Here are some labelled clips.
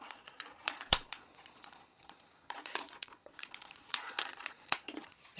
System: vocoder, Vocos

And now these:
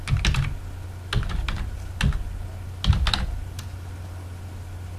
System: none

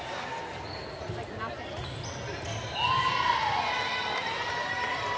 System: none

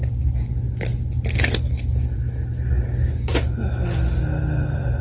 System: none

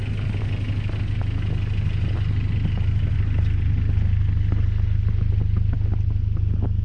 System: none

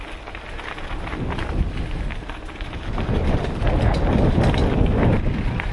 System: none